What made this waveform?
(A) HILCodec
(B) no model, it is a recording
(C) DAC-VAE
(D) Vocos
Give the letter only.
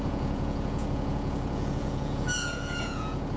D